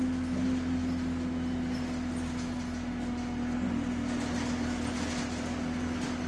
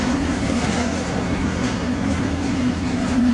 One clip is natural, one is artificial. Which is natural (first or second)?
first